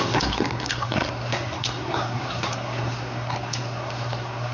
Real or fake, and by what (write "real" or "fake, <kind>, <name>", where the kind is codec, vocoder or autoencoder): fake, codec, SNAC